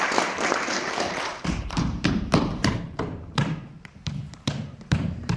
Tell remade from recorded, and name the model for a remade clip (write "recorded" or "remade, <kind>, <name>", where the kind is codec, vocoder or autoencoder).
remade, vocoder, BigVGAN v2